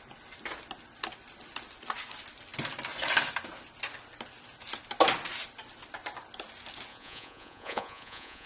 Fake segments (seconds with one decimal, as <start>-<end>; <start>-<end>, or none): 6.9-8.5